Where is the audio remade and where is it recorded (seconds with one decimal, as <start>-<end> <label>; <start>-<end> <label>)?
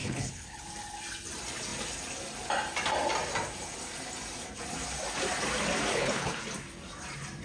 0.0-0.6 remade; 0.6-5.9 recorded; 5.9-6.4 remade; 6.4-7.4 recorded